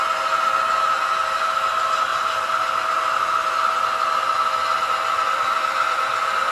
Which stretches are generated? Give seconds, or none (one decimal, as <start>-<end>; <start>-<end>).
none